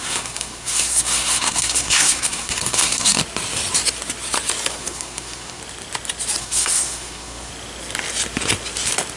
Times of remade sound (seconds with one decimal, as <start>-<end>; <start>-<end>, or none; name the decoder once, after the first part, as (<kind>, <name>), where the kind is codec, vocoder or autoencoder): 0.0-3.2 (codec, SNAC); 4.7-5.6; 6.4-7.5